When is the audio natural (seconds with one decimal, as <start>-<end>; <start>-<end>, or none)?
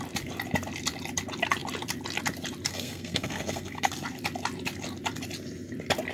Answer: 0.0-2.7; 3.9-6.1